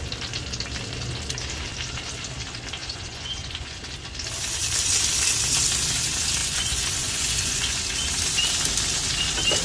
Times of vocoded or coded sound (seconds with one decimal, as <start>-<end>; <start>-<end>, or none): 2.8-3.9; 6.4-7.8